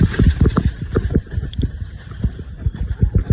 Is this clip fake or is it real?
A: fake